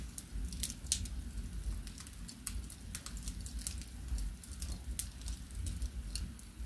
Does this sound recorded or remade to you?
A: recorded